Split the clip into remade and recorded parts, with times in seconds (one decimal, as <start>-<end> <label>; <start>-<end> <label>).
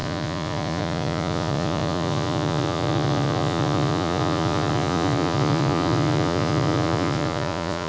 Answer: 0.0-7.9 remade